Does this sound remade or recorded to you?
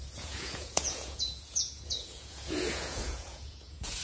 remade